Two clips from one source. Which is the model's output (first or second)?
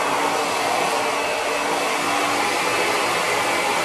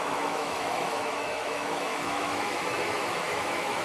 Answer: second